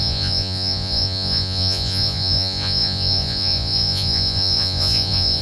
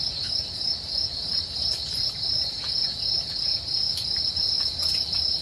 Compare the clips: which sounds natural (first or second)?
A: second